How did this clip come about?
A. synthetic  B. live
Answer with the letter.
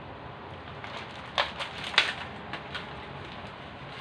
B